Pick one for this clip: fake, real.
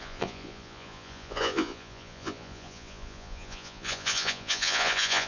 fake